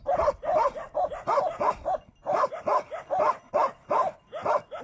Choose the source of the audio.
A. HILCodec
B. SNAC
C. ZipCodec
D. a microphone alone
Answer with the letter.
D